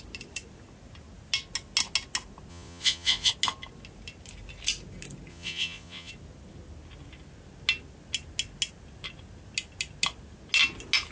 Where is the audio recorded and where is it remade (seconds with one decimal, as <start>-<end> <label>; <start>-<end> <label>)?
0.0-2.5 recorded; 2.5-3.3 remade; 3.3-5.3 recorded; 5.3-6.1 remade; 6.1-11.1 recorded